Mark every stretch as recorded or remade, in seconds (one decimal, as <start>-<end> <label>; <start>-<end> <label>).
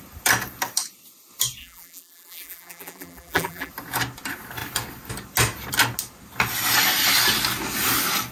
0.0-1.6 recorded; 1.6-3.7 remade; 3.7-8.3 recorded